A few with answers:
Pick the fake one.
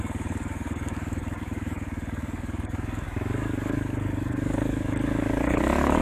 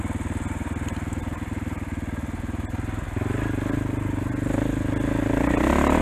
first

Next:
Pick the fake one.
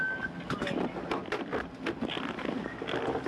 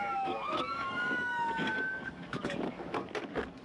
second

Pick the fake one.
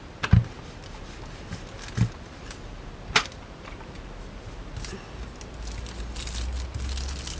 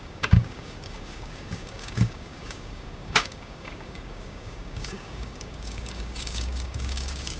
second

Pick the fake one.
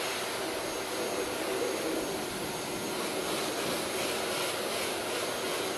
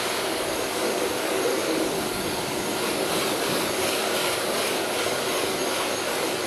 second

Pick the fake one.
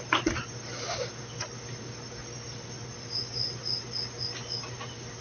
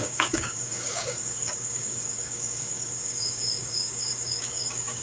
second